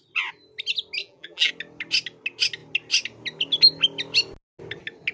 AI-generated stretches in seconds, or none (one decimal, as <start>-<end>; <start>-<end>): 1.0-1.5

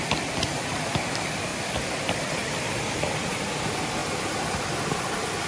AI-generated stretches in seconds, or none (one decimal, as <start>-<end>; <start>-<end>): 0.0-1.5; 2.0-5.5

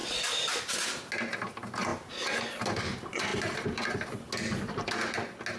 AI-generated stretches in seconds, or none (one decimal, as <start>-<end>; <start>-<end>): 0.0-1.1

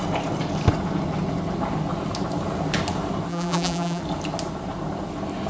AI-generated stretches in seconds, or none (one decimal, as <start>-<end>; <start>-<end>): 3.3-4.0

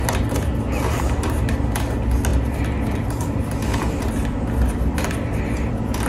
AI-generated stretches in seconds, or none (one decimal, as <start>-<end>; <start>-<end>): none

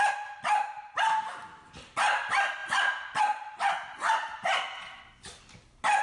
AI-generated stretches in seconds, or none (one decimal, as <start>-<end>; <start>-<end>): none

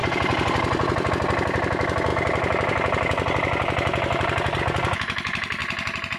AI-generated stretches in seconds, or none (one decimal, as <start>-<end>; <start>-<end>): 0.0-1.1; 2.1-4.6

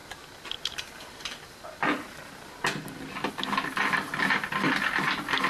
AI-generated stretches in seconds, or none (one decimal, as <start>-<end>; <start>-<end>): none